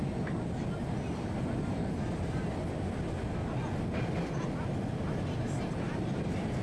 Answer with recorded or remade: recorded